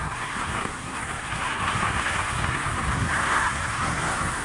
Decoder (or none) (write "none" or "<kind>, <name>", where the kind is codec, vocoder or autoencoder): codec, SNAC